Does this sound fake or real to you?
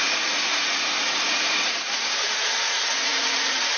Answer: fake